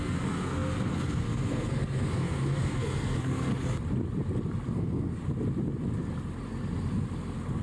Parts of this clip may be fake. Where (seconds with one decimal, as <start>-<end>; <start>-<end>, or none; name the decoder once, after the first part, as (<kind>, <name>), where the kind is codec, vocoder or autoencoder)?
0.0-3.5 (codec, SNAC); 4.7-5.2